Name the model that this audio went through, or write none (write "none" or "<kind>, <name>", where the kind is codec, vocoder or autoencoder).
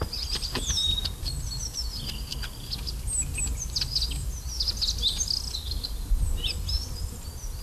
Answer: none